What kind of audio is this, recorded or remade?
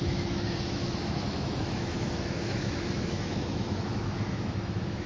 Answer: remade